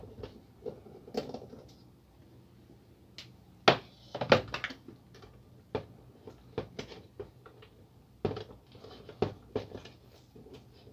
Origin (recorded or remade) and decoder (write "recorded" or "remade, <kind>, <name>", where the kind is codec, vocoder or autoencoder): recorded